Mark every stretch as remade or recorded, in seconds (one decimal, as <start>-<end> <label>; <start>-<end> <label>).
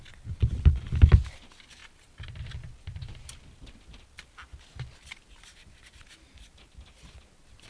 0.0-7.7 recorded